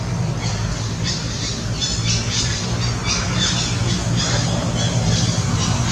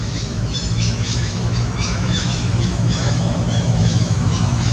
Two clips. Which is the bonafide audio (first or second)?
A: first